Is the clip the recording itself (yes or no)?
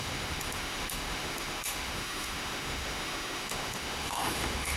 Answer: no